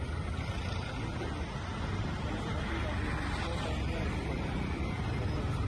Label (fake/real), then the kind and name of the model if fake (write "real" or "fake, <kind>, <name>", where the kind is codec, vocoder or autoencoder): real